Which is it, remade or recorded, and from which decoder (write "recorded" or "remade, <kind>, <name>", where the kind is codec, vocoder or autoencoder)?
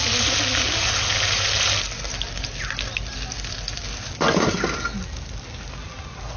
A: recorded